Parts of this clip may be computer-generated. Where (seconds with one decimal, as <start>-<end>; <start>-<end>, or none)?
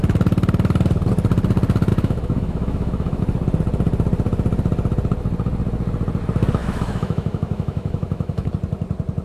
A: 1.9-3.2; 6.6-8.5